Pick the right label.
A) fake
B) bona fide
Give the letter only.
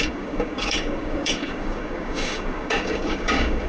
A